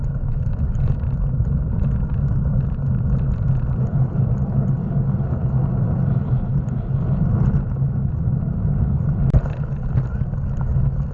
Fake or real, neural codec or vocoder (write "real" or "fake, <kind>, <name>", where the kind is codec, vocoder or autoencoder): real